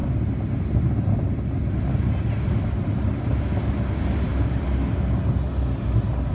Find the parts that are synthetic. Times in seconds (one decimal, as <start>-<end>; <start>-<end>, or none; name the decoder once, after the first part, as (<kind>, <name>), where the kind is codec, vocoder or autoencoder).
none